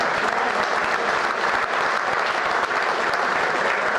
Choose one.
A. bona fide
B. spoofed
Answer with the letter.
A